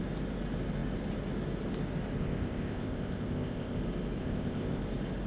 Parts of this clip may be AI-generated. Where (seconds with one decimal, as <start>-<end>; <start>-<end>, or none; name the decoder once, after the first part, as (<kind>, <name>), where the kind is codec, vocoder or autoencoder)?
2.2-3.8 (codec, ZipCodec); 4.2-4.8